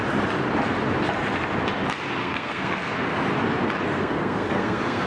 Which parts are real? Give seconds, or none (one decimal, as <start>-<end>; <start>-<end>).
0.0-2.2; 2.9-3.9